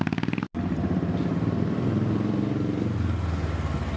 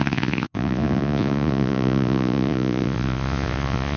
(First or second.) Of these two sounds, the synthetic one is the second